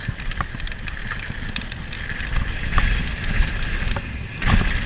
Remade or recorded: recorded